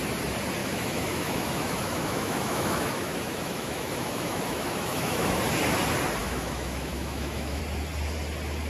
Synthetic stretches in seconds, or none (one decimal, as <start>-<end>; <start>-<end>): 0.6-5.4; 6.2-7.6

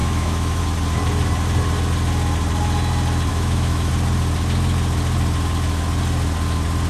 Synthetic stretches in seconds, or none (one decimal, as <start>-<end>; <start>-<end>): 0.0-0.6; 3.3-3.9

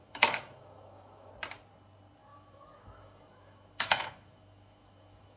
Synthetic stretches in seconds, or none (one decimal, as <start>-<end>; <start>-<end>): 0.0-1.3; 2.3-5.4

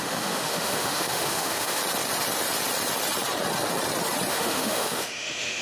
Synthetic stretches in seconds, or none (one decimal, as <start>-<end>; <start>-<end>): 0.0-1.8; 4.3-5.6

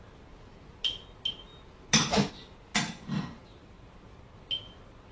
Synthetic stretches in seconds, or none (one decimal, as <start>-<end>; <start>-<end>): none